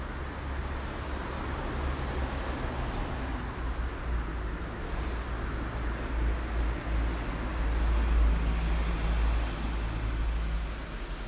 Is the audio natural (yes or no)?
yes